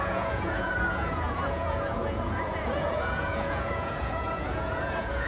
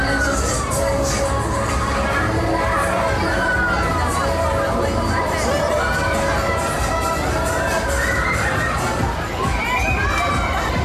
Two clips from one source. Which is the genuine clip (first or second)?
second